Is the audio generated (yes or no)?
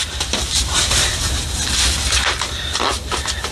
yes